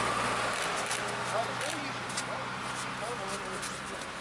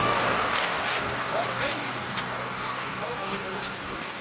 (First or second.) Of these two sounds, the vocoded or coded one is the second